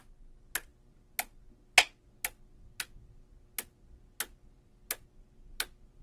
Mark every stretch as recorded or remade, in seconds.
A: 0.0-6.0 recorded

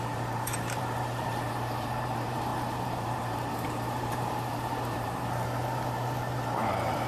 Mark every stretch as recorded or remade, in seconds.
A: 0.0-7.1 remade

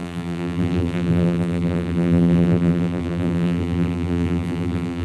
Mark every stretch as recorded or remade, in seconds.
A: 0.0-5.0 remade